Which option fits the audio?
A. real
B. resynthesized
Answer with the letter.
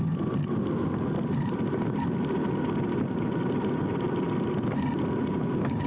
A